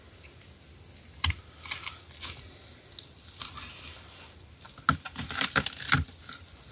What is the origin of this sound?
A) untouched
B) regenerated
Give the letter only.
A